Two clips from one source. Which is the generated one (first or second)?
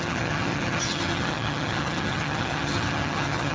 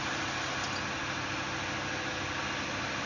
first